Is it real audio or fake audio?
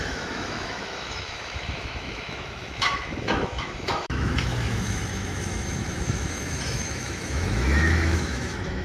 fake